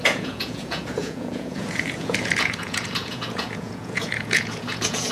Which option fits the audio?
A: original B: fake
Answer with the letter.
B